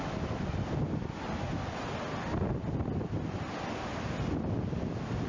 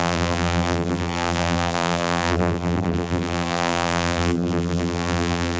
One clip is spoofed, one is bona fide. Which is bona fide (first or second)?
first